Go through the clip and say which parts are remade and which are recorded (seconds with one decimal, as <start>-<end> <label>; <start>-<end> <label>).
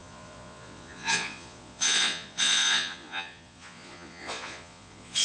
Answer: 0.0-5.2 remade